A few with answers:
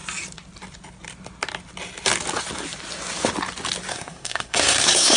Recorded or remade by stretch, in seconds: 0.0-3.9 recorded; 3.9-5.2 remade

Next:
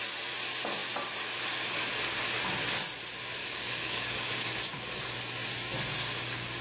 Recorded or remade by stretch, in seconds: 0.0-3.4 recorded; 3.4-4.6 remade; 4.6-6.6 recorded